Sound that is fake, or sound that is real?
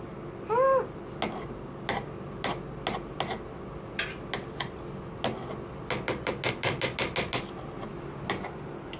real